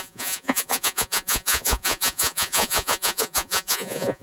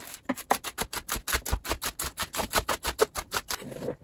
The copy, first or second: first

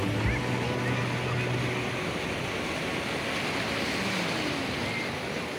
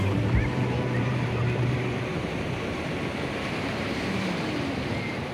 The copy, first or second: second